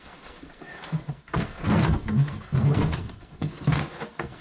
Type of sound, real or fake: fake